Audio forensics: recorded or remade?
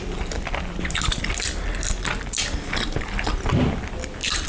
recorded